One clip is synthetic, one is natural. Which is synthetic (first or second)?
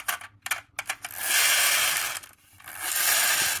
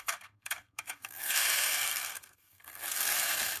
second